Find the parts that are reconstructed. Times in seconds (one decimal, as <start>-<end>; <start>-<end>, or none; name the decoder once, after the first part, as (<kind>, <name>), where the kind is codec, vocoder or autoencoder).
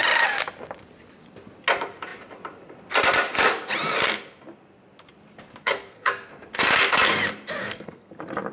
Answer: 5.6-6.3 (codec, SNAC); 7.6-8.1